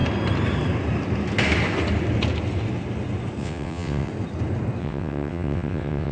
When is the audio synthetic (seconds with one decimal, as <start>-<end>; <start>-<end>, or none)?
3.4-4.1; 4.8-6.1